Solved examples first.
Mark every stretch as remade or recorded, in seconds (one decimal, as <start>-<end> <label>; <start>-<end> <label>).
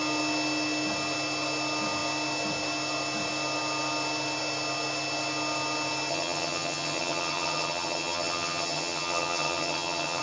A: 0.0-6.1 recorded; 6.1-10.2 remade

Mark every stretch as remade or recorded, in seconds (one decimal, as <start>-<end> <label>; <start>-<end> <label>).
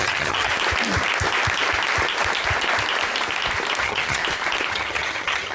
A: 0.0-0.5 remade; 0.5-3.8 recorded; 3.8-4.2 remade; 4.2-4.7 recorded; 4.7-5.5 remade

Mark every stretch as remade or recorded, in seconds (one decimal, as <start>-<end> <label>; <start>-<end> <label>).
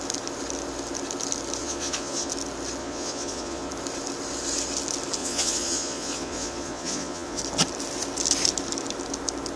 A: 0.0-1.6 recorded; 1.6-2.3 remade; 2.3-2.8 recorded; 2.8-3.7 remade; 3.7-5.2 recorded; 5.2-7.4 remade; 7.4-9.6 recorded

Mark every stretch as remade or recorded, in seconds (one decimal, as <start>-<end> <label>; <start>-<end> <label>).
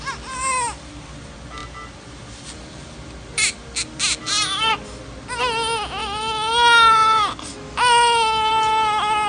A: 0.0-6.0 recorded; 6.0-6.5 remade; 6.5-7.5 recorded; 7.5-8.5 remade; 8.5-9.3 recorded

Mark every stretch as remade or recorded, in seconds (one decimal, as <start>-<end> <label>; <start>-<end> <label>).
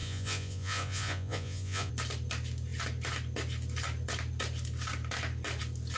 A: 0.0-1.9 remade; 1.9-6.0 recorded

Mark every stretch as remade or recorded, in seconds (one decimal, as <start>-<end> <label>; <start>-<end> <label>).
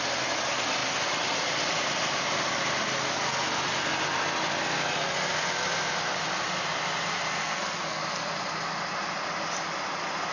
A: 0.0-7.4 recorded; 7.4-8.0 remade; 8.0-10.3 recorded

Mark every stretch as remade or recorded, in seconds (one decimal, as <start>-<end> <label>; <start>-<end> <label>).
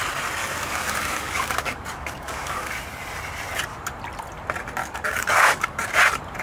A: 0.0-0.4 recorded; 0.4-2.8 remade; 2.8-4.8 recorded; 4.8-5.9 remade; 5.9-6.4 recorded